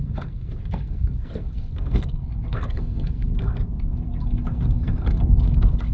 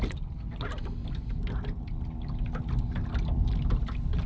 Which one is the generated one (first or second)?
first